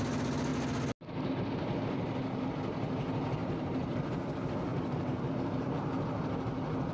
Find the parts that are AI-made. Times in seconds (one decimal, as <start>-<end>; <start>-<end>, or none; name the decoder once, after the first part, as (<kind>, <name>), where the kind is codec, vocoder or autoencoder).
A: 3.4-4.1 (vocoder, BigVGAN v2); 4.7-5.3